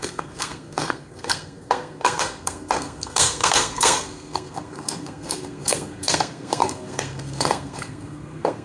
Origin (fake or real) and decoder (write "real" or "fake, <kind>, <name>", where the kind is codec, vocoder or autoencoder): fake, codec, SNAC